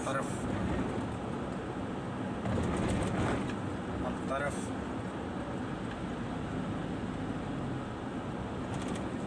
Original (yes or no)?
yes